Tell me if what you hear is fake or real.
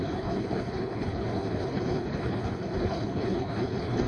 fake